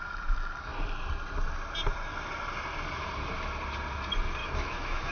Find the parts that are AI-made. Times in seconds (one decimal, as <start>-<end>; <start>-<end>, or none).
4.4-5.1